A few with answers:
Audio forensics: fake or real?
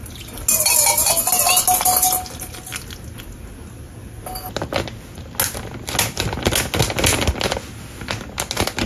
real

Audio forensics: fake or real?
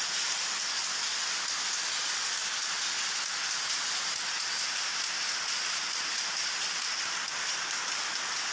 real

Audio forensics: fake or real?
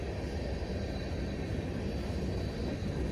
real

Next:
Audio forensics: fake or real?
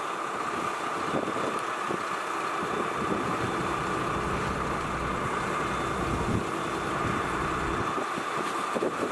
real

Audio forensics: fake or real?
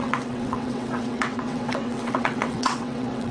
fake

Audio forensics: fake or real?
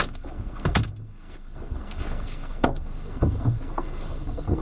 fake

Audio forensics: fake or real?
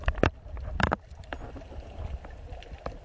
real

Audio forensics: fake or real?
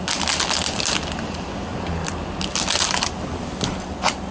real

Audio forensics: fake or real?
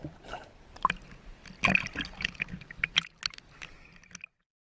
real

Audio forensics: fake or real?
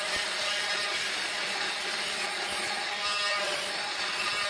real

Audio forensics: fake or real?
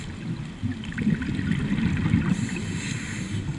real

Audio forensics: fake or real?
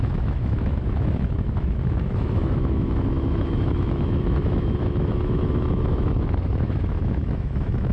fake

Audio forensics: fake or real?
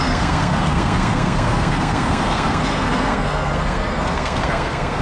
fake